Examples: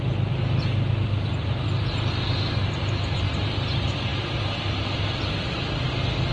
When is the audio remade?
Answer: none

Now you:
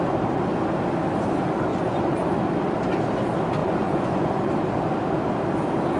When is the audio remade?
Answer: 1.7-2.4; 3.6-4.5